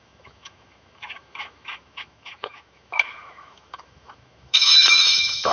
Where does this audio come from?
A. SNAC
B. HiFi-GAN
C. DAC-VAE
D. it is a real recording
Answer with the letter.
C